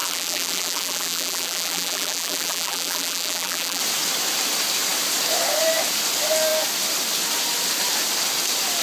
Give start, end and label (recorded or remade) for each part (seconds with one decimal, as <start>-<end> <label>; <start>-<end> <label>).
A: 0.0-3.8 remade; 3.8-8.8 recorded

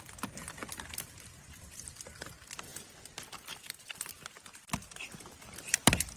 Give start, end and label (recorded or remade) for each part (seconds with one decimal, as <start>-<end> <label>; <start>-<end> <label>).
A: 0.0-2.7 recorded; 2.7-4.1 remade; 4.1-6.2 recorded